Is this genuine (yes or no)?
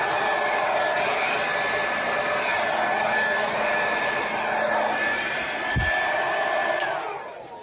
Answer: yes